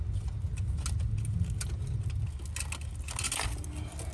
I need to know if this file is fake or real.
real